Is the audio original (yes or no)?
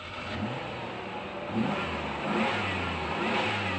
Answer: yes